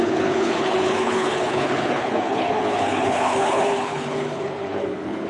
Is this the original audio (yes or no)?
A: no